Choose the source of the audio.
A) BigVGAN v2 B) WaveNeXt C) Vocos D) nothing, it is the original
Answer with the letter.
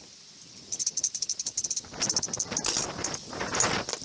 D